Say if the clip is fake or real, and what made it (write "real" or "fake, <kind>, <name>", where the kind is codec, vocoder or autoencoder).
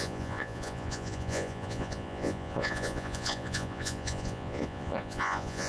fake, vocoder, Vocos